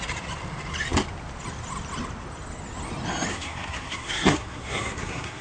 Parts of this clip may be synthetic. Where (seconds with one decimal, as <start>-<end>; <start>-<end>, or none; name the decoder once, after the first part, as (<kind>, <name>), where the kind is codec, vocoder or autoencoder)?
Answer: 3.3-5.4 (codec, SNAC)